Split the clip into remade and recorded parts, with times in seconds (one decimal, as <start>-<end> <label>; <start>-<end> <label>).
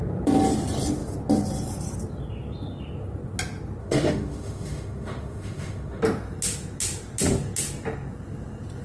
0.0-3.8 recorded; 3.8-6.0 remade; 6.0-8.8 recorded